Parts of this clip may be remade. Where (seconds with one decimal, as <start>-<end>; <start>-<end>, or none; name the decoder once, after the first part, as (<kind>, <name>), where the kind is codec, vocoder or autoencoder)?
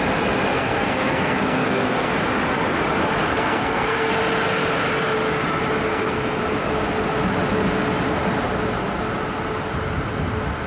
0.5-2.1 (codec, SNAC); 3.2-4.1; 5.9-6.4